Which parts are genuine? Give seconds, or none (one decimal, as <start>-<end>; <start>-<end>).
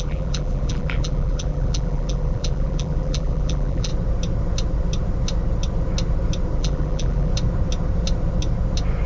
3.9-6.6; 7.3-9.1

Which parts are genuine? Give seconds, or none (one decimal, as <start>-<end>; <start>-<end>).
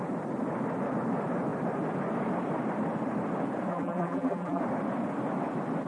0.0-3.7; 4.6-5.9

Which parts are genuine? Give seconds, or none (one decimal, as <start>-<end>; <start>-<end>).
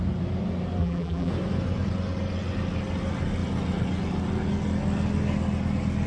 0.0-0.8; 1.3-6.1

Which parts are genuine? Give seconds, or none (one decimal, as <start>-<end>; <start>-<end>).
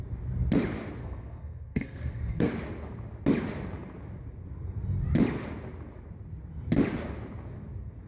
0.0-1.0; 2.5-8.1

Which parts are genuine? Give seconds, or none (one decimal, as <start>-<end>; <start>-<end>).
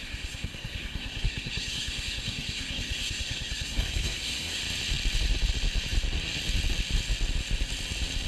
4.6-8.3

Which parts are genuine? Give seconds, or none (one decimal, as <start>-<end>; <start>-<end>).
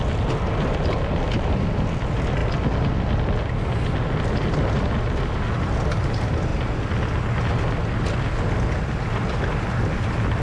0.0-10.4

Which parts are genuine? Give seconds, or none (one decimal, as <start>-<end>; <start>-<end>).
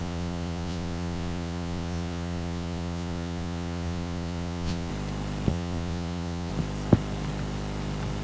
4.9-5.5; 6.5-8.2